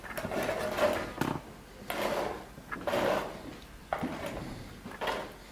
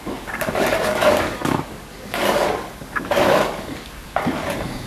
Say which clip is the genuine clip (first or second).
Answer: first